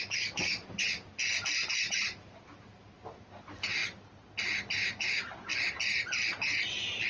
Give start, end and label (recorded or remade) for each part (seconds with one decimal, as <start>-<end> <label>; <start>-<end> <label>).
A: 0.0-1.1 remade; 1.1-1.7 recorded; 1.7-3.8 remade; 3.8-4.4 recorded; 4.4-5.5 remade; 5.5-7.1 recorded

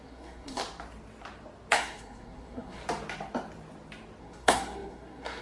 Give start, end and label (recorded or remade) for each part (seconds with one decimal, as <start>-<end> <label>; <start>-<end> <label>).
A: 0.0-0.6 remade; 0.6-1.7 recorded; 1.7-2.8 remade; 2.8-4.2 recorded; 4.2-5.4 remade

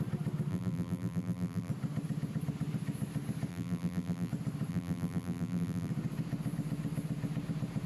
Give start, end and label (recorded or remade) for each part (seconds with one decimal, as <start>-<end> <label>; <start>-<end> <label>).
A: 0.0-0.5 recorded; 0.5-1.7 remade; 1.7-3.5 recorded; 3.5-4.3 remade; 4.3-4.7 recorded; 4.7-5.9 remade; 5.9-7.9 recorded